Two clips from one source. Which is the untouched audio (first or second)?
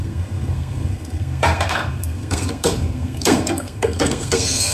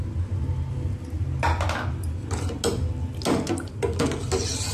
second